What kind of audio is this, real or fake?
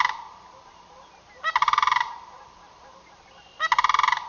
real